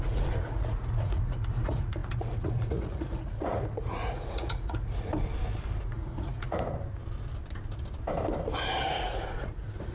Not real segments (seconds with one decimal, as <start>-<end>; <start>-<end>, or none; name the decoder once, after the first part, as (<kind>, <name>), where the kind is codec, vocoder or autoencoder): 0.0-5.1 (vocoder, Vocos); 5.8-6.7; 8.9-9.9